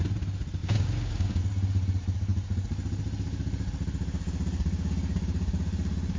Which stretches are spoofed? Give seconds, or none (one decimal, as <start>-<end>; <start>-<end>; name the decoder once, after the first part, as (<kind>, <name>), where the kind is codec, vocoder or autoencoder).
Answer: 0.6-1.4 (codec, DAC)